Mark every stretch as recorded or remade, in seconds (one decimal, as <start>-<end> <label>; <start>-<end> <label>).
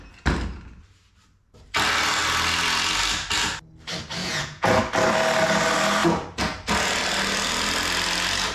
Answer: 0.0-4.2 recorded; 4.2-4.8 remade; 4.8-8.5 recorded